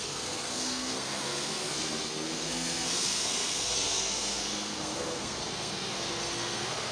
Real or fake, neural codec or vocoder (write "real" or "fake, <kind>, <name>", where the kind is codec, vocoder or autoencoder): fake, codec, SNAC